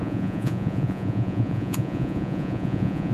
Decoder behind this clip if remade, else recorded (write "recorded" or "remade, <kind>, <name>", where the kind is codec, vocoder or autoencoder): remade, vocoder, Vocos